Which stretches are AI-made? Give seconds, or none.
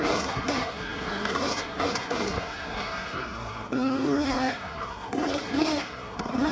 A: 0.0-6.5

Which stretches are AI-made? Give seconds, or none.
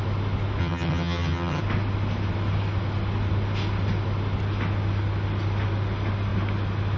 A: 0.6-1.6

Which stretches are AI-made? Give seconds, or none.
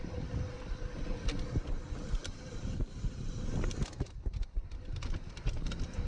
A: none